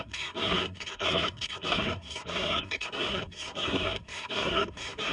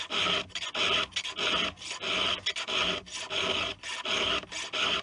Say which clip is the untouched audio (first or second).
second